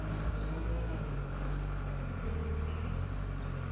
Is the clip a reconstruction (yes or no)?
no